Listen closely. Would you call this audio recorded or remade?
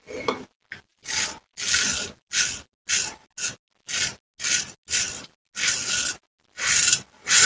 recorded